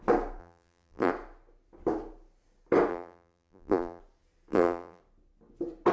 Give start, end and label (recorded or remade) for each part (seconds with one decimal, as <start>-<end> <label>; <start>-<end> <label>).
0.0-0.4 recorded; 0.4-1.1 remade; 1.1-2.9 recorded; 2.9-4.0 remade; 4.0-4.5 recorded; 4.5-5.0 remade; 5.0-5.9 recorded